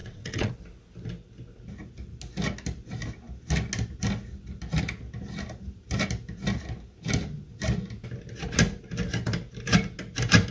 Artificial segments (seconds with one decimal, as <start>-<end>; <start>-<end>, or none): 0.0-0.5